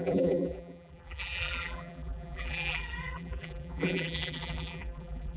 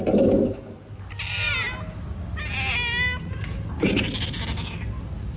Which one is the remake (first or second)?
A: first